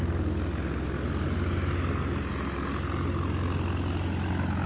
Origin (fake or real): real